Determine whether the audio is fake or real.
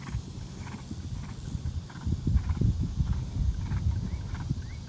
real